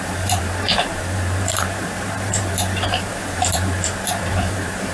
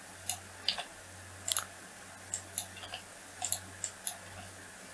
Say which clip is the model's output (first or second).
first